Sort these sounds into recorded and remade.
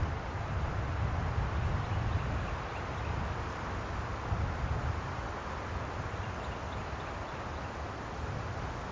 recorded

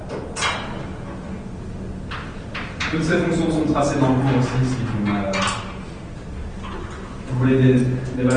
recorded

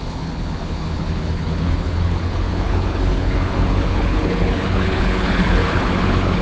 remade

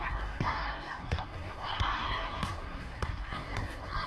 remade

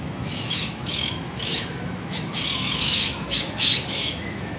remade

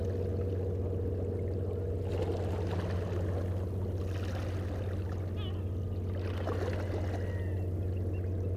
recorded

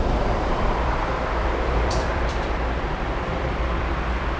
remade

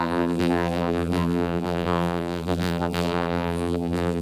remade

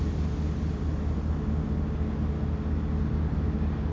recorded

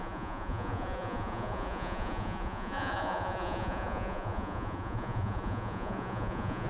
remade